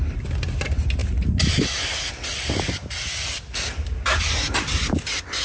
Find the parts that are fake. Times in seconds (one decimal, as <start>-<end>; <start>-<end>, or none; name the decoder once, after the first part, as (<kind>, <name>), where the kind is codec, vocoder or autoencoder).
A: none